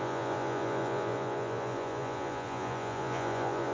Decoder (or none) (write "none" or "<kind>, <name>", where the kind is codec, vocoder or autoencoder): vocoder, Vocos